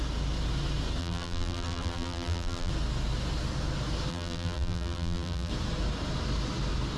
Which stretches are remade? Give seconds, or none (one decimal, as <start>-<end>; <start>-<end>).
1.0-2.7; 4.1-5.5